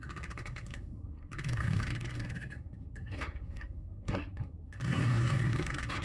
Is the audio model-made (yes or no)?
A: yes